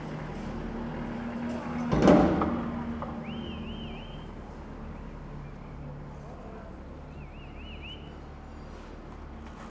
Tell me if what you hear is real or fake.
real